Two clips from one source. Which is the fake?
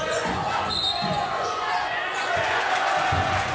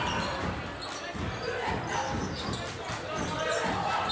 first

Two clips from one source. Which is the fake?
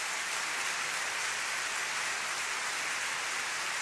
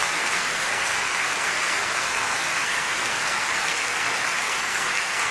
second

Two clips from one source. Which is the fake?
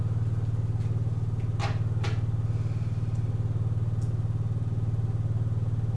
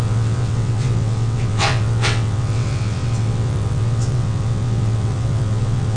second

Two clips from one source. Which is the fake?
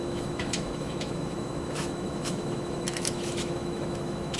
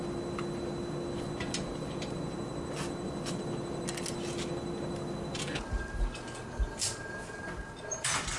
first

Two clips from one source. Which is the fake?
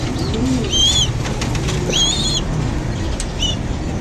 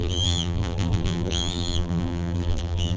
second